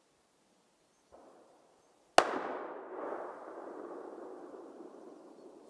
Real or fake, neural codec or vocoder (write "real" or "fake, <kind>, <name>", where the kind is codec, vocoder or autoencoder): real